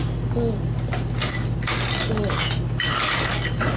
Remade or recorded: recorded